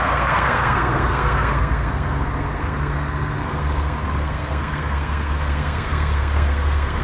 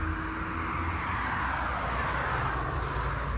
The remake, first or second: first